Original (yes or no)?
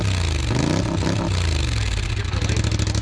yes